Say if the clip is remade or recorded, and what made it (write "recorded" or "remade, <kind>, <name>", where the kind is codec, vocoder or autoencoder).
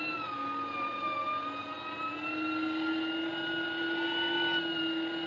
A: recorded